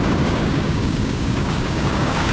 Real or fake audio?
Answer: fake